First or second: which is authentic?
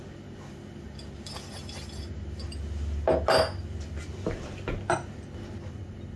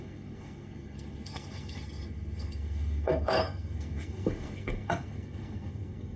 first